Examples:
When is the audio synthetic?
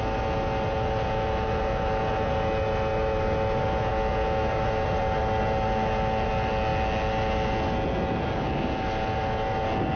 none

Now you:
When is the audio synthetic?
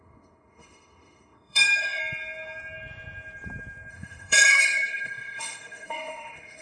0.0-2.0 (autoencoder, DAC-VAE); 3.9-6.6